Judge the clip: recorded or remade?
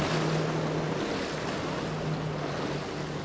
recorded